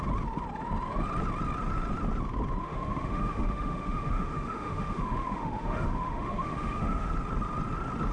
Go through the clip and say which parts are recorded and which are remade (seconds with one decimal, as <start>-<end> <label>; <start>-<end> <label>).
0.0-2.6 recorded; 2.6-7.1 remade; 7.1-8.1 recorded